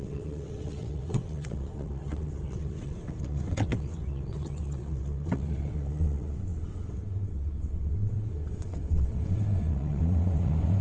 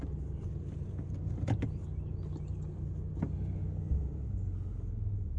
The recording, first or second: second